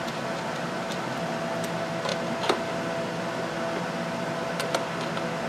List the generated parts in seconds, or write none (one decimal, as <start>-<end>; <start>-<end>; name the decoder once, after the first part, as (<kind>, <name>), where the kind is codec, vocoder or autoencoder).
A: none